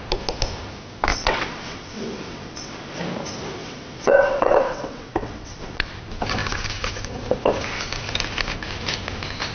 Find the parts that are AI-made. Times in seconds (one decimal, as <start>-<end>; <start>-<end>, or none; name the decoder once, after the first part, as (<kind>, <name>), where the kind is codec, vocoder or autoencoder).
1.1-3.0 (vocoder, WaveNeXt); 3.6-6.0